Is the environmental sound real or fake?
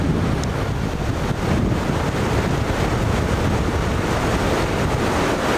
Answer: real